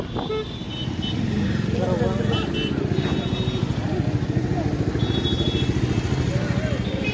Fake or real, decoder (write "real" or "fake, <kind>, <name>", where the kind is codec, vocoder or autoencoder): real